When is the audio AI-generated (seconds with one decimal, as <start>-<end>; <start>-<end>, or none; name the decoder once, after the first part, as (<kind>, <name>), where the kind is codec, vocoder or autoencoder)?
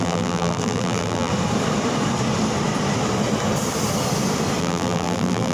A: 0.0-1.3 (vocoder, BigVGAN v2); 4.6-5.5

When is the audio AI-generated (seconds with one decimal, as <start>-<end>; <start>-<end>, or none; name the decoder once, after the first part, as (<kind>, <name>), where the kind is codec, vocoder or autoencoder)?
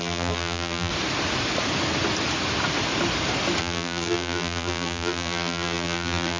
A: 0.0-0.9 (vocoder, BigVGAN v2); 3.6-6.4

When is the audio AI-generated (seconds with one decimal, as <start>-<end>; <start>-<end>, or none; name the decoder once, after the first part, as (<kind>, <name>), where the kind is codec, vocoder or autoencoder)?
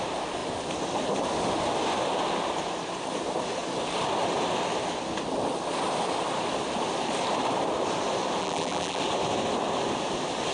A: 8.4-9.0 (vocoder, BigVGAN v2)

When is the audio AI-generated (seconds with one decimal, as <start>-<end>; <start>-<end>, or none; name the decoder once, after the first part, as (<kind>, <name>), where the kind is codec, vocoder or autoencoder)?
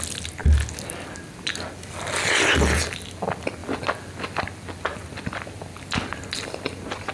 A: 6.1-7.1 (vocoder, BigVGAN v2)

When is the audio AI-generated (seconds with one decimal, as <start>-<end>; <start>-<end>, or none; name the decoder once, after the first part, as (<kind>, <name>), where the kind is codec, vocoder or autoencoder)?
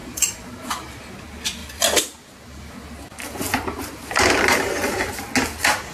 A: 0.0-1.2 (vocoder, BigVGAN v2); 1.6-4.1